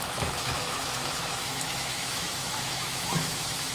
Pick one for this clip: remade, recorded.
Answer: remade